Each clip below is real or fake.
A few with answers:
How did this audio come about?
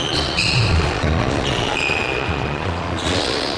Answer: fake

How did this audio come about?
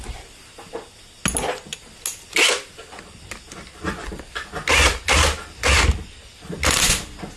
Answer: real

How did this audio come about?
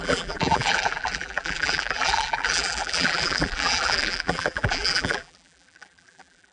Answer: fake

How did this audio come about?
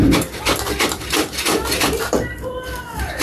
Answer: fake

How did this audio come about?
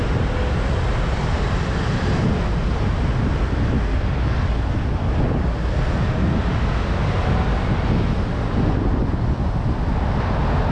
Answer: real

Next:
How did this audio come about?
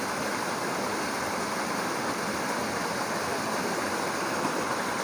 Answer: real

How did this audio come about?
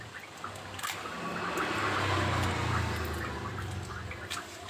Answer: real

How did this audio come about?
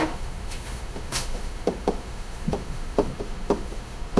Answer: fake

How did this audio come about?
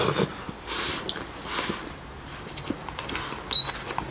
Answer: real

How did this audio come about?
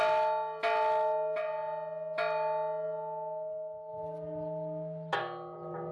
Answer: real